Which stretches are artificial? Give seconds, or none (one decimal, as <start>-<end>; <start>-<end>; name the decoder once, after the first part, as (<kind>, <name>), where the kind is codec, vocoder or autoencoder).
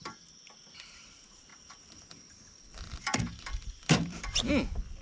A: 1.5-4.5 (vocoder, BigVGAN v2)